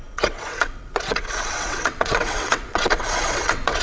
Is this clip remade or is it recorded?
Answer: remade